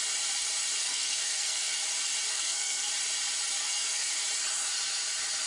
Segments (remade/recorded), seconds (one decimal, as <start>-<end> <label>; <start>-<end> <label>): 0.0-0.8 recorded; 0.8-1.8 remade; 1.8-2.3 recorded; 2.3-2.9 remade; 2.9-3.6 recorded; 3.6-4.1 remade; 4.1-5.5 recorded